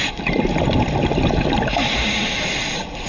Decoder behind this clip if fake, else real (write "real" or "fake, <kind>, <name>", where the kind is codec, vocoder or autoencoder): real